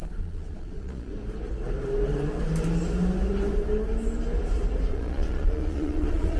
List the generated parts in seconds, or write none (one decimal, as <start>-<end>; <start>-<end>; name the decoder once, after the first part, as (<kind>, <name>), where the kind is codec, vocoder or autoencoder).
0.0-1.1 (vocoder, Vocos); 4.9-6.4